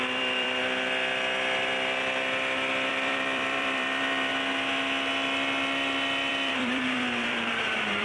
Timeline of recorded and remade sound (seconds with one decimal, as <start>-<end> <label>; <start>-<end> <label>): 0.0-0.6 remade; 0.6-2.9 recorded; 2.9-4.3 remade; 4.3-6.3 recorded; 6.3-8.0 remade